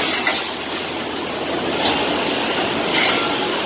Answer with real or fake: real